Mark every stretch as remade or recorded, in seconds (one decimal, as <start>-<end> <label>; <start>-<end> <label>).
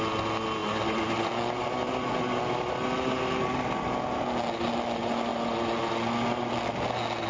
0.0-7.3 recorded